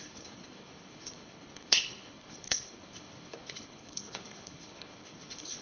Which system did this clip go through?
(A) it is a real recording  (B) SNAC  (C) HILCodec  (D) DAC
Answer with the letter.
C